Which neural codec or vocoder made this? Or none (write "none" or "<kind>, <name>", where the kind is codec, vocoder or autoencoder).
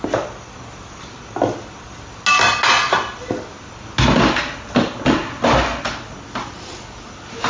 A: none